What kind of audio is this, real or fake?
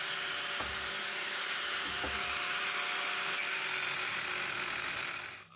real